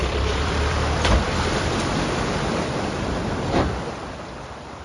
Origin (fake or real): fake